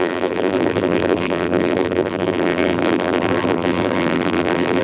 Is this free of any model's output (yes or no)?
no